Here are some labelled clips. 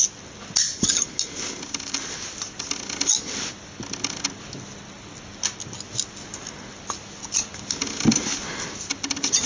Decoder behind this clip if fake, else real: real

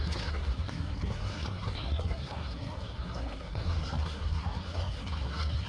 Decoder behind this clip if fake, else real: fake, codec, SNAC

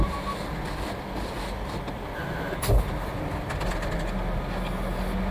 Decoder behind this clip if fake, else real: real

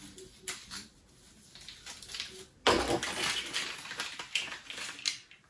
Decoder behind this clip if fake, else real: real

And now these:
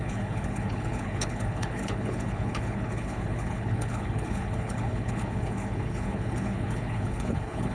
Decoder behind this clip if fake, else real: fake, codec, HILCodec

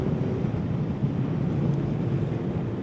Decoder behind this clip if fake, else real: real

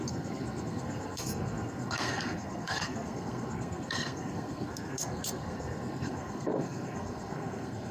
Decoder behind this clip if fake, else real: fake, codec, SNAC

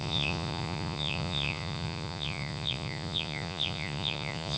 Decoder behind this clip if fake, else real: fake, vocoder, Vocos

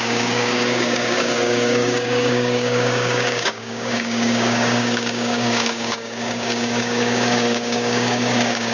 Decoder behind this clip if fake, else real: fake, codec, DAC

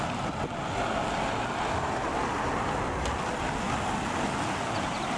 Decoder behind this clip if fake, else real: real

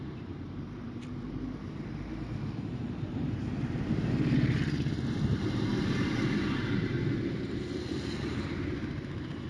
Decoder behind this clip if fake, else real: fake, vocoder, BigVGAN v2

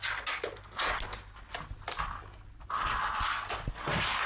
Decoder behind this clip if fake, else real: real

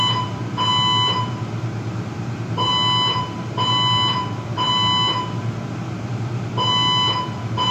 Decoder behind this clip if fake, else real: real